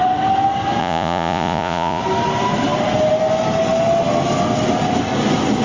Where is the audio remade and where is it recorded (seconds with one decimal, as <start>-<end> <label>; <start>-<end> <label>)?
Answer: 0.0-0.8 recorded; 0.8-2.0 remade; 2.0-5.6 recorded

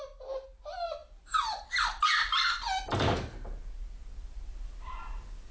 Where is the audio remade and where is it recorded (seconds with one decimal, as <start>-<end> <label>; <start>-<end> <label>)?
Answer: 0.0-5.5 recorded

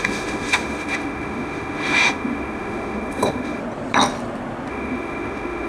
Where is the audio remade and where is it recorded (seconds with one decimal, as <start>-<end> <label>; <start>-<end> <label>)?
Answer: 0.0-3.6 remade; 3.6-4.7 recorded; 4.7-5.7 remade